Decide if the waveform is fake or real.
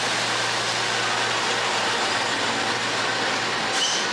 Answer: real